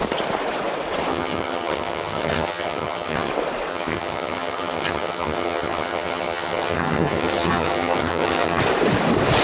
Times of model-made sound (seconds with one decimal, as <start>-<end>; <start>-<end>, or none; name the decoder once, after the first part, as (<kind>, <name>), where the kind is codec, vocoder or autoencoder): 1.1-3.3 (vocoder, HiFi-GAN); 3.7-8.6